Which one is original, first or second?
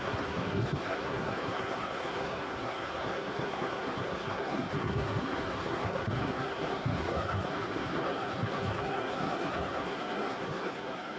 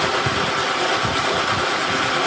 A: second